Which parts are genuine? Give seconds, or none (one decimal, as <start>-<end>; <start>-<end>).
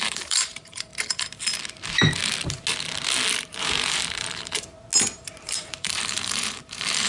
0.9-3.4; 4.7-5.5